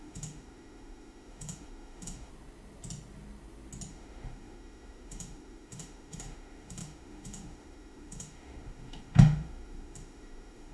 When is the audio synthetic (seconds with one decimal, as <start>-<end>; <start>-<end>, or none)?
0.0-2.3; 3.9-10.7